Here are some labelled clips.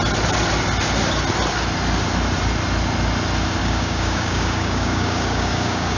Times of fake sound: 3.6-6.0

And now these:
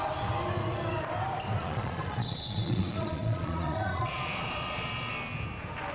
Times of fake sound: 1.6-5.1

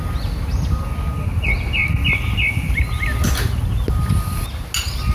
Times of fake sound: none

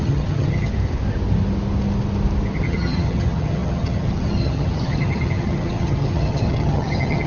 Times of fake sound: 0.0-0.7; 2.6-7.3